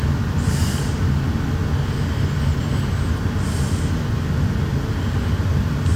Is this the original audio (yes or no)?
yes